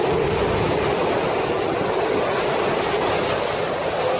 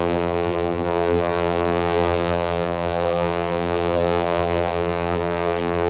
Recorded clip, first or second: first